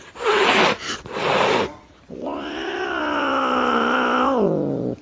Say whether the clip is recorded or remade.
recorded